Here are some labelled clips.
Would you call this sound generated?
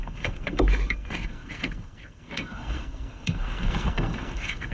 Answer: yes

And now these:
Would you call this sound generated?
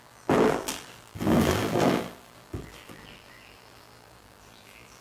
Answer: yes